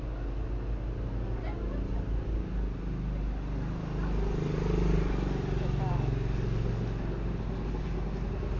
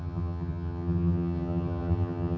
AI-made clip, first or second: second